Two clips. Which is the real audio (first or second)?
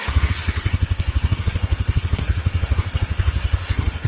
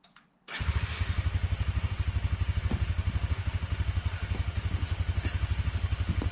second